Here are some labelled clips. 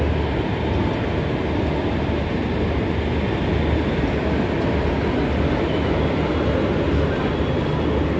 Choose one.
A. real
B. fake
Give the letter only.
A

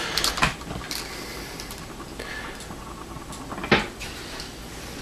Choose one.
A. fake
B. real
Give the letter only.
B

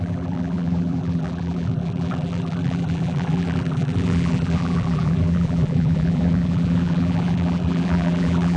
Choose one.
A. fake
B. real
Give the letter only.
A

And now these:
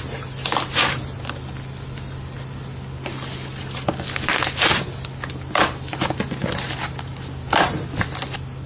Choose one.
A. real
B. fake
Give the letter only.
A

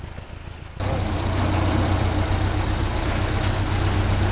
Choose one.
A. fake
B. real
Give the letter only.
B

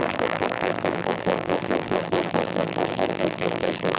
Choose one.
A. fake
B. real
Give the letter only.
A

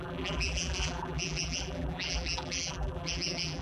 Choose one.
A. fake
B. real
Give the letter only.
A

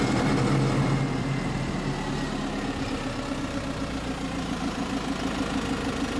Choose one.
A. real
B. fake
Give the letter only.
A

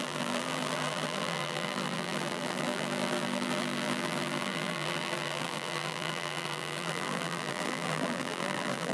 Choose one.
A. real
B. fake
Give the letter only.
B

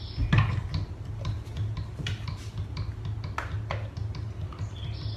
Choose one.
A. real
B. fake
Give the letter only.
A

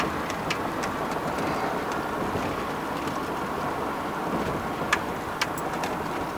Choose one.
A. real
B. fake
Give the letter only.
B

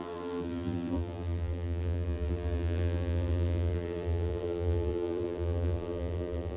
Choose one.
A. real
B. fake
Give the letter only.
B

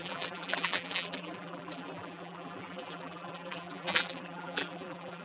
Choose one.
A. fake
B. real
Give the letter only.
A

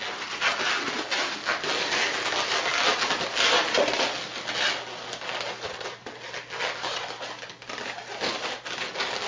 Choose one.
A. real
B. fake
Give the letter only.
A